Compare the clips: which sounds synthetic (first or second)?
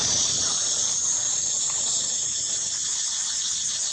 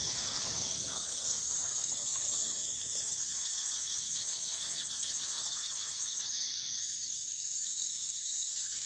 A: second